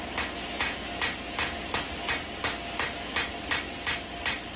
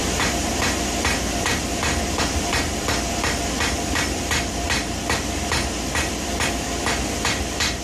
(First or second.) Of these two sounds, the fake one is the second